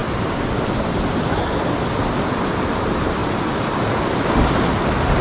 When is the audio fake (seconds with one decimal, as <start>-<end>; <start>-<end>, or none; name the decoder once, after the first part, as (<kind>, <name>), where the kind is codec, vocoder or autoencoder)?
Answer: none